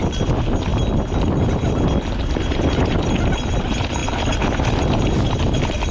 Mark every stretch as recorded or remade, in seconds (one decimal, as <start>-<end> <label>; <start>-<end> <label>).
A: 0.0-5.9 recorded

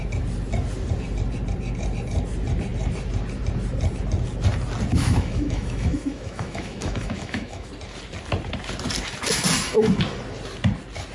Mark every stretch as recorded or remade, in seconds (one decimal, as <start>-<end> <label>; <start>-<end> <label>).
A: 0.0-4.9 recorded; 4.9-7.7 remade; 7.7-11.1 recorded

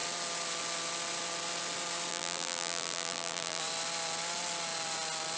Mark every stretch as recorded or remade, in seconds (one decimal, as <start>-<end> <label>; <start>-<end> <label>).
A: 0.0-2.1 recorded; 2.1-3.6 remade; 3.6-5.4 recorded

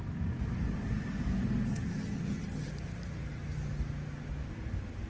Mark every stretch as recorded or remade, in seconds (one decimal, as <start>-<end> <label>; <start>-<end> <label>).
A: 0.0-1.7 recorded; 1.7-2.7 remade; 2.7-5.1 recorded